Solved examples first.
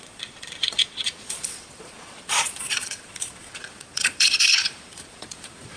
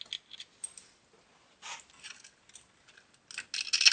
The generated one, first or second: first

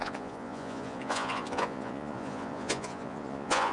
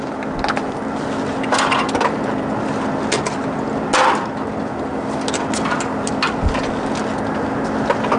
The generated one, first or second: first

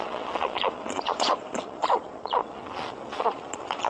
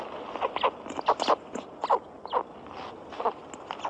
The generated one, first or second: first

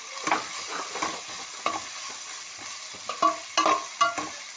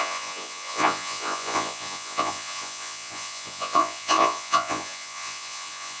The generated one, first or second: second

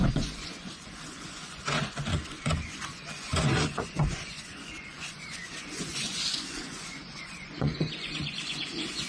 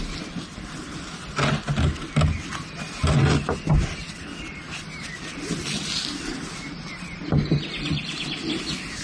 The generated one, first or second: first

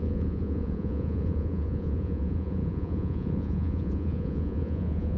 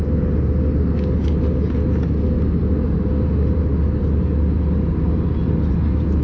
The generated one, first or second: first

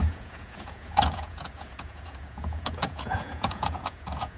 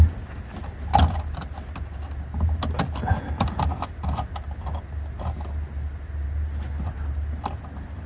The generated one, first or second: first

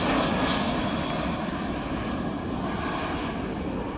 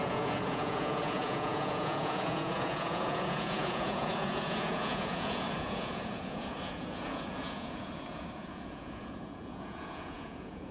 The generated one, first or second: second